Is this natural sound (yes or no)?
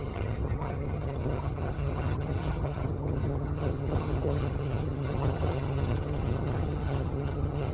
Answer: no